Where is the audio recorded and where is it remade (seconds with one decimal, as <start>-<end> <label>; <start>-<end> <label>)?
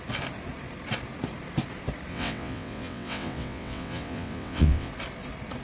0.0-2.1 recorded; 2.1-4.9 remade; 4.9-5.6 recorded